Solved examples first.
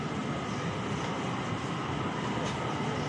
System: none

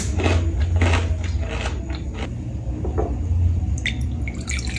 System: none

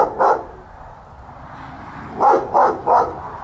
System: none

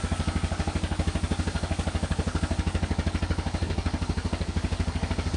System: codec, DAC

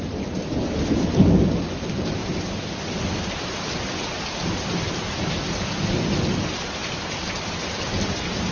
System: none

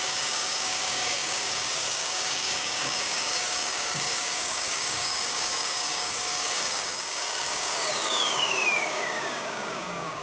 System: codec, DAC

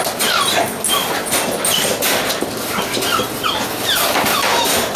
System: none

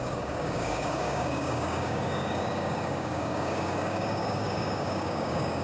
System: codec, DAC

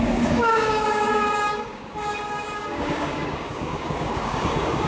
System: codec, DAC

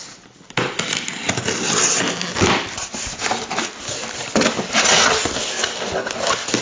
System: none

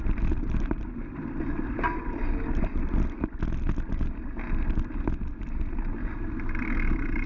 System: none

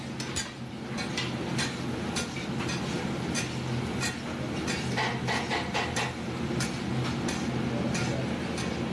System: none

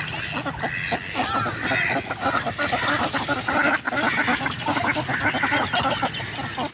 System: none